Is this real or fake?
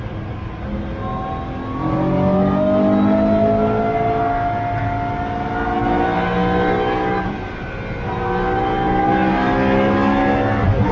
real